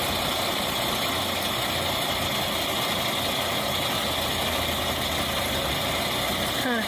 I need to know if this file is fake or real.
real